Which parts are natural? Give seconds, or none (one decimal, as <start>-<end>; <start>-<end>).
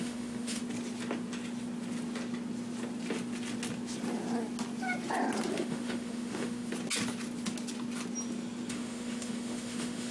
0.6-5.5; 6.7-8.7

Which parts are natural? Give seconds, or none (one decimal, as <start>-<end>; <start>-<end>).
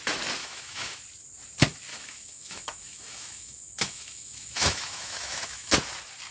0.0-0.4; 1.0-1.9; 5.7-6.3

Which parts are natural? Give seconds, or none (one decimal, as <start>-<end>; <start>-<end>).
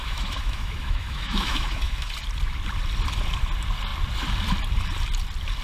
2.1-5.6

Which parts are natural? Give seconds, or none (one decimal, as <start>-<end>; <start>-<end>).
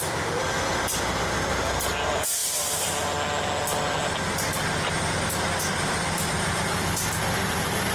0.0-7.9